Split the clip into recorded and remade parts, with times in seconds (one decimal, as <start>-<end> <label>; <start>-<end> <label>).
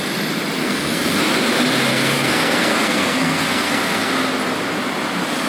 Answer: 0.0-0.6 recorded; 0.6-1.2 remade; 1.2-1.9 recorded; 1.9-4.1 remade; 4.1-5.5 recorded